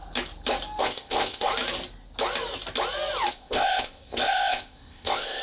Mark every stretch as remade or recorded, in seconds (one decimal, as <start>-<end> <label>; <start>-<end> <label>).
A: 0.0-0.8 recorded; 0.8-1.5 remade; 1.5-3.3 recorded; 3.3-5.4 remade